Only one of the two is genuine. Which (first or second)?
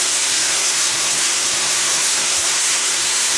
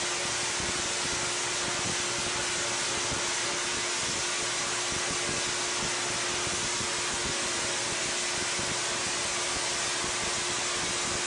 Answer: second